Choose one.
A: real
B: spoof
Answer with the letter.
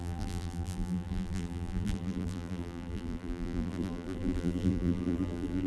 B